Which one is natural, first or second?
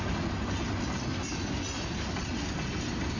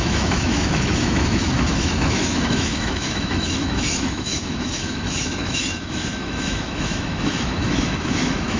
first